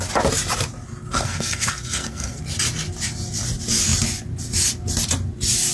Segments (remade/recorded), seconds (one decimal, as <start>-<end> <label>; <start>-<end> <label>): 0.0-1.1 recorded; 1.1-2.4 remade; 2.4-5.7 recorded